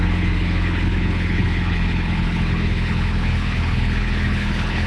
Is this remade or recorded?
remade